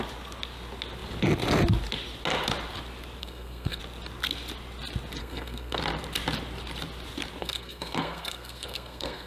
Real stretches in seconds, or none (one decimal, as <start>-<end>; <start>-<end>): 0.0-3.2; 3.8-5.2; 5.8-7.4